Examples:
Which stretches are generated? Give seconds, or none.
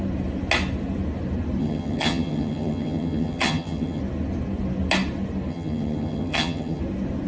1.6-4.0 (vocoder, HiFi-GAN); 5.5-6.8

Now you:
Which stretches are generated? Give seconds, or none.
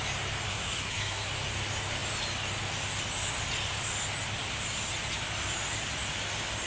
0.5-1.3 (codec, SNAC)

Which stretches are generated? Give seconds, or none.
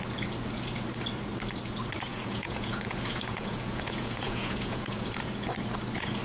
2.1-5.1 (vocoder, Vocos)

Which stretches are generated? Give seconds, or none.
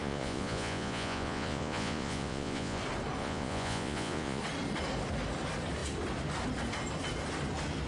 0.0-2.8 (vocoder, Vocos); 3.2-4.4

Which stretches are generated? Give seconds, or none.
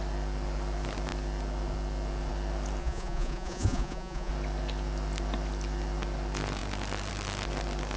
2.8-4.3 (vocoder, Vocos)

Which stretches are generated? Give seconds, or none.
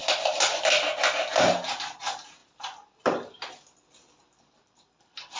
none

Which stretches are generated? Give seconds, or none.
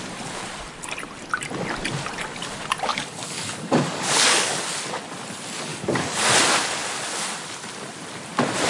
2.9-4.6 (codec, DAC); 5.7-6.3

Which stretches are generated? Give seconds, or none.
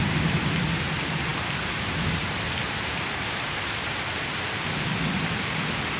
4.9-5.5 (vocoder, BigVGAN v2)